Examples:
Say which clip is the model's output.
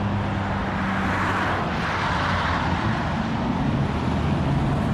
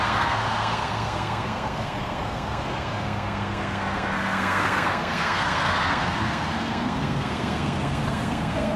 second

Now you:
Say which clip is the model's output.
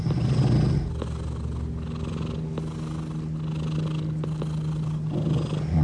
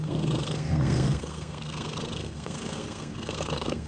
second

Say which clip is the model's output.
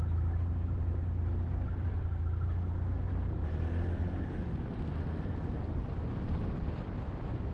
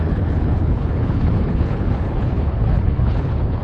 second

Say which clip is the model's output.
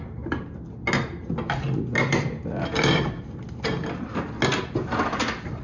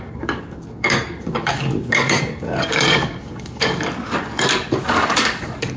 second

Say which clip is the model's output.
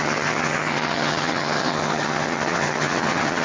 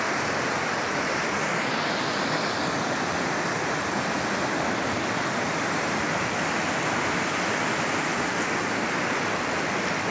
first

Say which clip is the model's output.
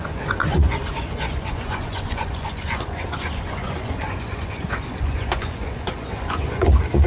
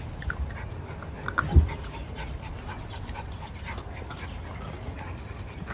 first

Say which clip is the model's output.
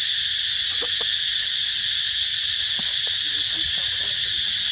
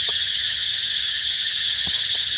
second